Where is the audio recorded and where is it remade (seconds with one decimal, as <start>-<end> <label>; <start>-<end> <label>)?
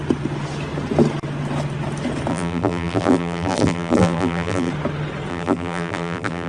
0.0-2.3 recorded; 2.3-4.7 remade; 4.7-5.3 recorded; 5.3-6.5 remade